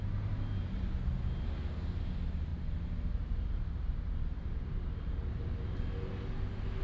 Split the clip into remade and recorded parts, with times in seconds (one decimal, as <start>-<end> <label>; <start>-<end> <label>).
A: 0.0-6.8 recorded